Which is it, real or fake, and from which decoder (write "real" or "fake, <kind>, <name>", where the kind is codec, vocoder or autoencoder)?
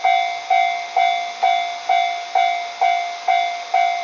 real